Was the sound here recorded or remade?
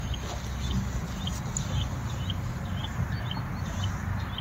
recorded